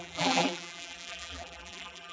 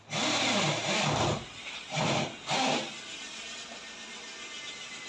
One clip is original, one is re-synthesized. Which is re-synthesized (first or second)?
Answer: first